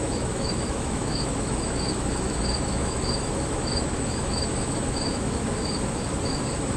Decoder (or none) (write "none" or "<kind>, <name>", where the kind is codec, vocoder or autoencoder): autoencoder, DAC-VAE